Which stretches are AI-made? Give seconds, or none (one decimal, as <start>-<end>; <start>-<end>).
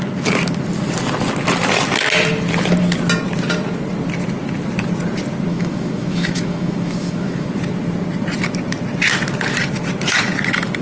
5.5-7.5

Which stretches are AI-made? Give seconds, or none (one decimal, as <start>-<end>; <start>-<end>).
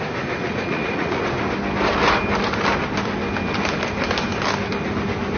0.4-1.2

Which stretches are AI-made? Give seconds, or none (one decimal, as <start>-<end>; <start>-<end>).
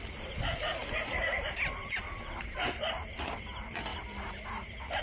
0.8-2.3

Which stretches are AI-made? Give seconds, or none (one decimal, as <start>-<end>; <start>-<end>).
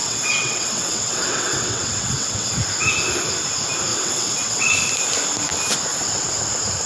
0.0-2.6; 3.9-4.7; 5.9-6.4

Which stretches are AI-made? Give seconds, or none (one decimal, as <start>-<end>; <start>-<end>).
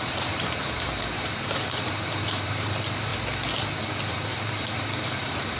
0.0-3.1; 4.1-5.6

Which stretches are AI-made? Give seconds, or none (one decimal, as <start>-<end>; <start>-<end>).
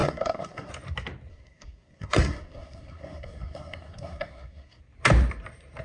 0.0-0.7; 1.3-4.8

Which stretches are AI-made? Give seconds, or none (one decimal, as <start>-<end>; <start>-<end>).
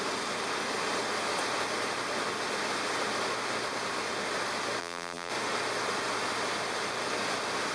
4.8-5.3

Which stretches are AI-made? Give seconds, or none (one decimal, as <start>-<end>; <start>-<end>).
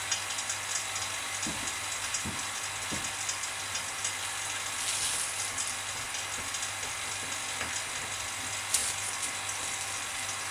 none